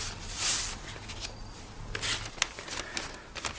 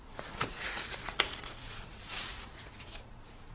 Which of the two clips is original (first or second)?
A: first